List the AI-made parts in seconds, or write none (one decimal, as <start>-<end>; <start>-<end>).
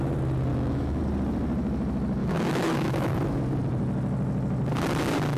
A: 0.5-1.0; 2.2-3.1